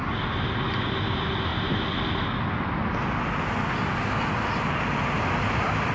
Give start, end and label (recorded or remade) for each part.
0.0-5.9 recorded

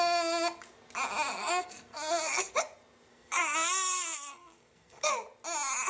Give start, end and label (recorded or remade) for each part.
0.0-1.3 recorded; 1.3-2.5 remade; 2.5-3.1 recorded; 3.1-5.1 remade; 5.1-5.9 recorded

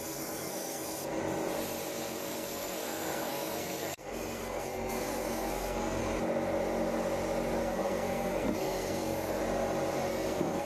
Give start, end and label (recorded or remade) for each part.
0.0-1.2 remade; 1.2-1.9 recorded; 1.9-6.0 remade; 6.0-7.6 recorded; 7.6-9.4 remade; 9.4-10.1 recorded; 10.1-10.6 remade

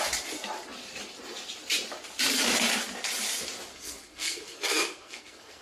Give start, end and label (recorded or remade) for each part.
0.0-3.7 recorded; 3.7-5.6 remade

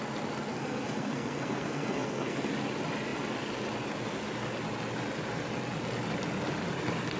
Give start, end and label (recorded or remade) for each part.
0.0-0.5 recorded; 0.5-2.5 remade; 2.5-7.2 recorded